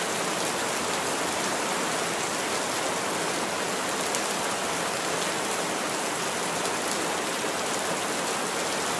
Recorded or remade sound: recorded